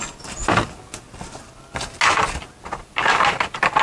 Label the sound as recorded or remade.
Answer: recorded